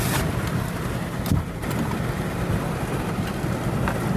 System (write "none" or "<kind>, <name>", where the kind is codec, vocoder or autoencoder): none